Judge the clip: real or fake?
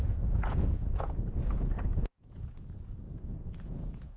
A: fake